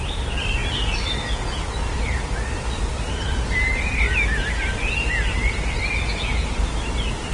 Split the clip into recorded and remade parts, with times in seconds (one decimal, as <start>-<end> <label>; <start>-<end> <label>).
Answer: 0.0-7.3 recorded